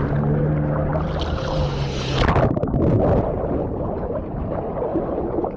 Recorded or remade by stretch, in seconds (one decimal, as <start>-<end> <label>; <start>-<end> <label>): 0.0-4.9 recorded; 4.9-5.6 remade